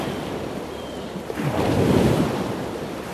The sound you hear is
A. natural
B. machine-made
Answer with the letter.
B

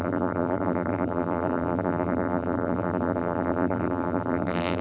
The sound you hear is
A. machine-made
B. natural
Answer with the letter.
A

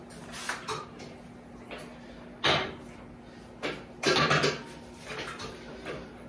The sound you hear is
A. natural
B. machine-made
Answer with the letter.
A